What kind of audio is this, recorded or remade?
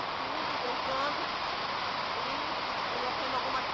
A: recorded